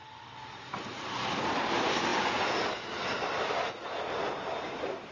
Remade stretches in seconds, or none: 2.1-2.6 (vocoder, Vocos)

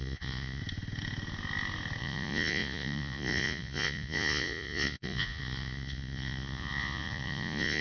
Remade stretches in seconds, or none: 0.0-0.6 (vocoder, Vocos); 2.0-7.8

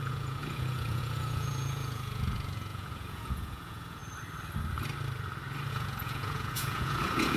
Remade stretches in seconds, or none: 0.0-4.0 (vocoder, Vocos); 5.7-7.4

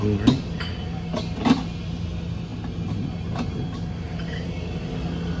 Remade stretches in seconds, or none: none